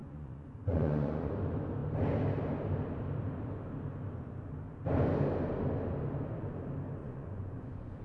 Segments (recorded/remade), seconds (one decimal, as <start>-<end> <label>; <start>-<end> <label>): 0.0-1.3 remade; 1.3-7.0 recorded; 7.0-8.0 remade